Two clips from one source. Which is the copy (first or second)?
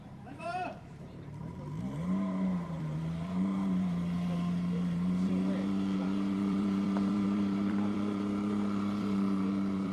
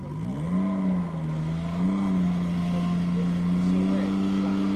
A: first